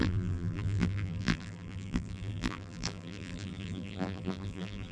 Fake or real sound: fake